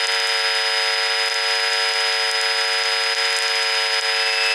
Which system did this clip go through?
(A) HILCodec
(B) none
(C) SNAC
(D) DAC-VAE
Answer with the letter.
B